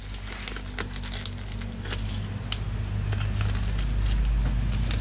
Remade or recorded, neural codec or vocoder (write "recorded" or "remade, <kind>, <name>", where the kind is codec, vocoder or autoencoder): recorded